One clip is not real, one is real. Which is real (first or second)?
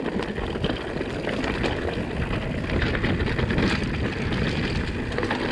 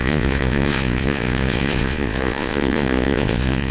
first